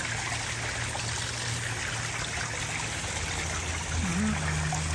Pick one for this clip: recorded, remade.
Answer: recorded